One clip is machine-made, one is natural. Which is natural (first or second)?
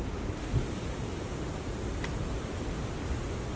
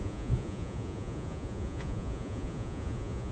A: first